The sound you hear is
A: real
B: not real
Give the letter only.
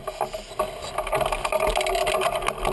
A